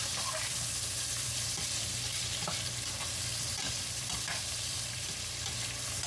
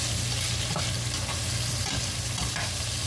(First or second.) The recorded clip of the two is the second